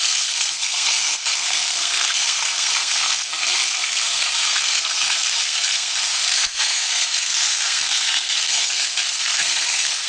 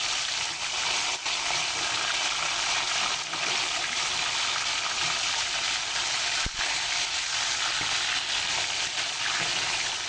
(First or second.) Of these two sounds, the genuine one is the second